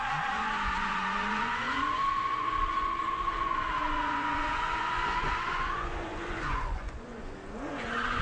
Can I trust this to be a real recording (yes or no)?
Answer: no